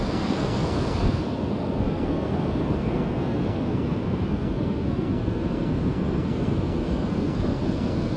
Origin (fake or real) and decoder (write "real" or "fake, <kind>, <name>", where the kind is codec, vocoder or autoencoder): fake, codec, SNAC